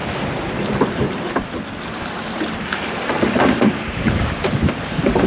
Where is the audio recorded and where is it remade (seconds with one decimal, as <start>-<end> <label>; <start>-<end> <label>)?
0.0-2.8 recorded; 2.8-5.3 remade

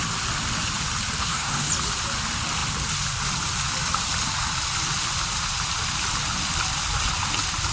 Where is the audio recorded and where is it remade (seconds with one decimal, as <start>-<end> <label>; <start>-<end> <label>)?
0.0-1.2 recorded; 1.2-1.7 remade; 1.7-7.7 recorded

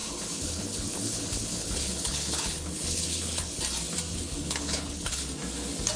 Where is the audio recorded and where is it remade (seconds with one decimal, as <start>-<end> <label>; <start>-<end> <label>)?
0.0-3.6 remade; 3.6-4.1 recorded; 4.1-5.2 remade; 5.2-6.0 recorded

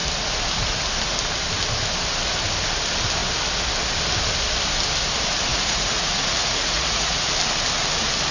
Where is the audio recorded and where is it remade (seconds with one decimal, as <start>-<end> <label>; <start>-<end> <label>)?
0.0-5.5 recorded; 5.5-7.3 remade; 7.3-8.3 recorded

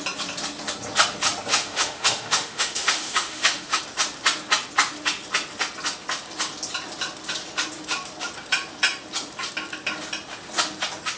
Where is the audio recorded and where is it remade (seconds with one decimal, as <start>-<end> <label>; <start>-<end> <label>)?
0.0-1.5 recorded; 1.5-3.8 remade; 3.8-11.2 recorded

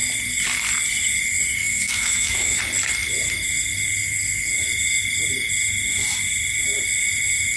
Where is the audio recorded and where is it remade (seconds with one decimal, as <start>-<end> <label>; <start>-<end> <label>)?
0.0-1.6 recorded; 1.6-2.6 remade; 2.6-7.6 recorded

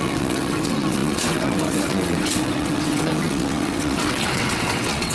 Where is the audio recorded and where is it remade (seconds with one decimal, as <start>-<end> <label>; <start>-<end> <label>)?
0.0-5.1 remade